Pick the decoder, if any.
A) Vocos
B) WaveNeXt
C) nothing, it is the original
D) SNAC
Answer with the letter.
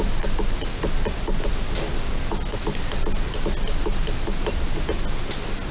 C